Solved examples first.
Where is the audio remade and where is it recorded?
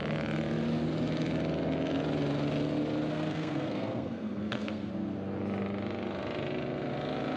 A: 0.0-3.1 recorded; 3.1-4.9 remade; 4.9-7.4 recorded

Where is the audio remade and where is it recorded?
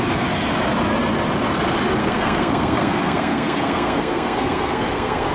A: 0.0-2.0 recorded; 2.0-5.3 remade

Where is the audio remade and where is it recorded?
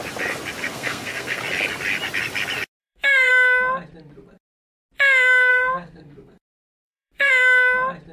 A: 0.0-0.6 recorded; 0.6-1.4 remade; 1.4-2.8 recorded; 2.8-3.3 remade; 3.3-5.5 recorded; 5.5-7.3 remade; 7.3-8.1 recorded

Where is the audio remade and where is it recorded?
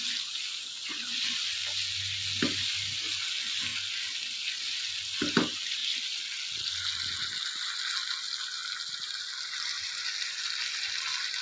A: 0.0-11.4 recorded